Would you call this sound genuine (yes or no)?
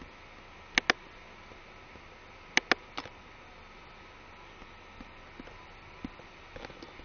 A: yes